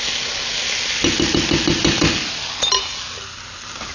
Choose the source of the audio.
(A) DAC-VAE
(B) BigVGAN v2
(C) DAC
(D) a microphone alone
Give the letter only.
D